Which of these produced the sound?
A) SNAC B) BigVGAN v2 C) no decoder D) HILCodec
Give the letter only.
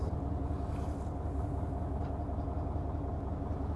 C